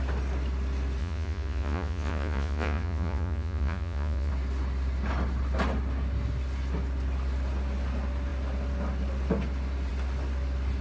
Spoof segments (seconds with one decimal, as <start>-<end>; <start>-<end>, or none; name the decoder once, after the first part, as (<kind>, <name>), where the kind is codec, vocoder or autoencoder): 1.0-4.3 (vocoder, Vocos)